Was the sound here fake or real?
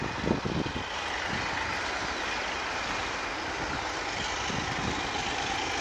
real